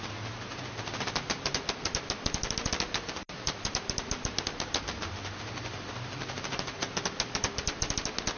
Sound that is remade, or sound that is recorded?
recorded